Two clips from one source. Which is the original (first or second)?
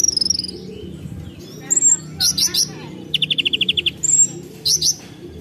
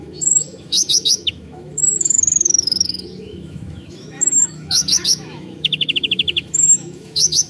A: first